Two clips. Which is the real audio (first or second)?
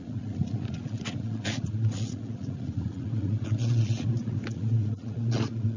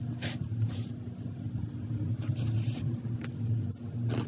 second